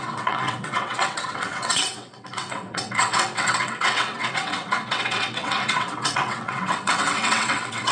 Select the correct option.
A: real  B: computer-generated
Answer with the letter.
B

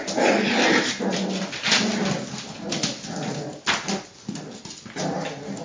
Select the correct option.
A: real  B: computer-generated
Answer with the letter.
A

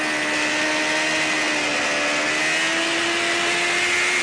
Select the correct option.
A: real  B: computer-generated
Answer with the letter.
A